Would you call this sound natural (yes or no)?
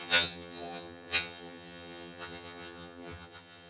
no